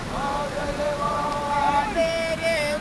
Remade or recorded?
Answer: remade